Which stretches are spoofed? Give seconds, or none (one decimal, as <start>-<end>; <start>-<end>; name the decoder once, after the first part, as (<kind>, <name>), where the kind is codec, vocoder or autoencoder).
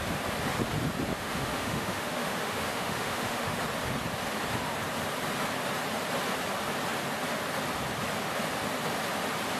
1.1-3.6 (autoencoder, DAC-VAE)